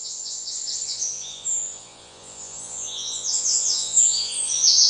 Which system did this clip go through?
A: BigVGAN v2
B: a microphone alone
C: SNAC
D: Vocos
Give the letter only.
D